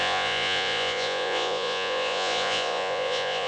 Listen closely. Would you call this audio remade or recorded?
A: remade